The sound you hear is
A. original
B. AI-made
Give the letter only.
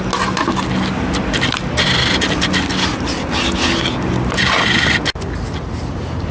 A